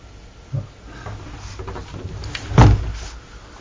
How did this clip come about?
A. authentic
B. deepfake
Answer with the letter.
A